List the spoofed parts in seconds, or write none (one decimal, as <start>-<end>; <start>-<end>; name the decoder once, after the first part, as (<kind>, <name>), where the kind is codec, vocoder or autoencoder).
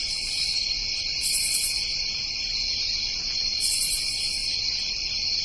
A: none